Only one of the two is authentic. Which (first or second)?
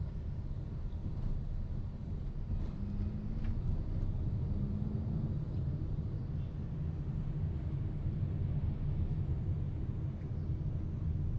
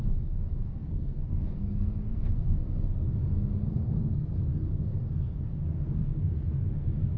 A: first